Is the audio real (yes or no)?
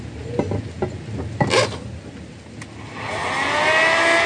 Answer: yes